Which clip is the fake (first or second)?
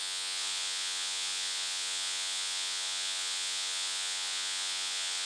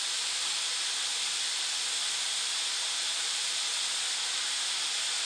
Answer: first